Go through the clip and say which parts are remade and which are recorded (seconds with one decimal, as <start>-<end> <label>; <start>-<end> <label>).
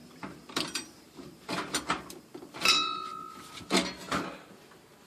0.0-3.1 remade; 3.1-5.1 recorded